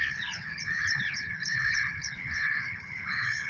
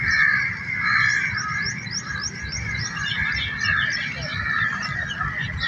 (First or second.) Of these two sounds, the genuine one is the second